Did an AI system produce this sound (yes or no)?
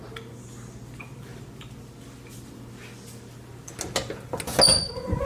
no